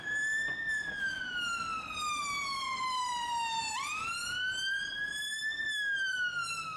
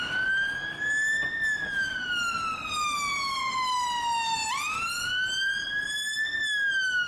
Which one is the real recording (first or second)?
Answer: second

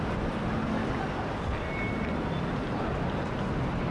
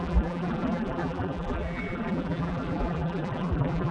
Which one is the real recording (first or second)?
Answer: first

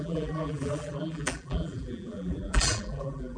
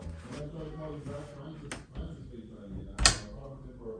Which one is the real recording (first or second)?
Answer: second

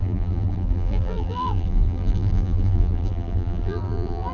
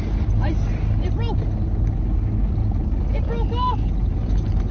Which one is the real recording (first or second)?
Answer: second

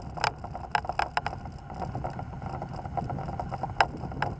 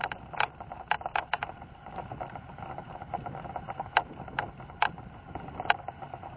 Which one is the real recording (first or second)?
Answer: first